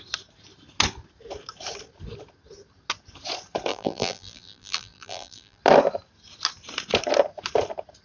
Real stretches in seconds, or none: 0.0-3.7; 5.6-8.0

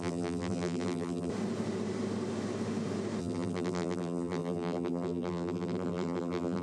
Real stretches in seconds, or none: 1.3-3.2